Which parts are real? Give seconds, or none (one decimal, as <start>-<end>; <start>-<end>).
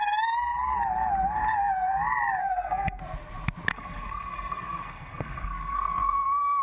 0.0-2.4; 3.0-3.7